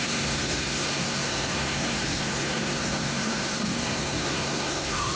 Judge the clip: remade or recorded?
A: remade